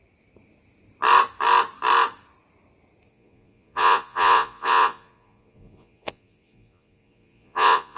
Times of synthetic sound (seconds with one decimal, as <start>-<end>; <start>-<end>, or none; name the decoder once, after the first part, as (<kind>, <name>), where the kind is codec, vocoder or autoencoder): 3.1-8.0 (vocoder, Vocos)